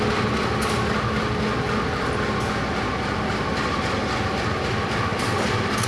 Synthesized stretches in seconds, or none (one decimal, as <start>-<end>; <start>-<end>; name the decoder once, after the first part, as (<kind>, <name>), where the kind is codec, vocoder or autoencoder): none